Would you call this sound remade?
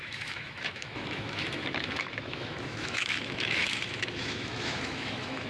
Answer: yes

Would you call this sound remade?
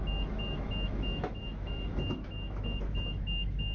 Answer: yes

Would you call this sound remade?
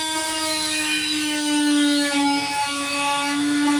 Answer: yes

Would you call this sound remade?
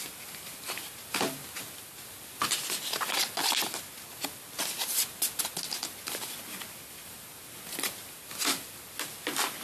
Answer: no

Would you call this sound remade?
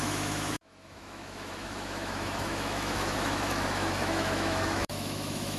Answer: yes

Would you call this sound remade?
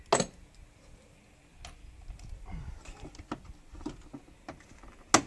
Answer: no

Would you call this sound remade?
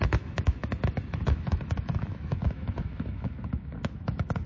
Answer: yes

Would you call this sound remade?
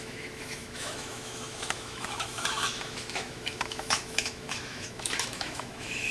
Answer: yes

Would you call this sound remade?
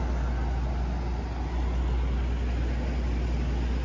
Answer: no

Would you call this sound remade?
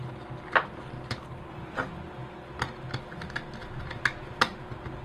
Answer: no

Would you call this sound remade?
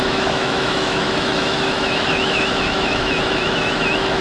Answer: yes